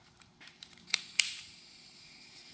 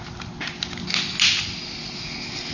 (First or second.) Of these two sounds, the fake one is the first